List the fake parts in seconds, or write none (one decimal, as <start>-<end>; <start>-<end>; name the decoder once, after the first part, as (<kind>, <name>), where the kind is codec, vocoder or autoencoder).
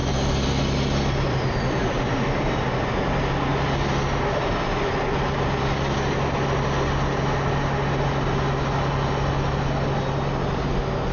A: none